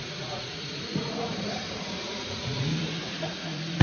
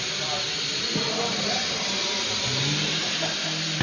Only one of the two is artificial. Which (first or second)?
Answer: first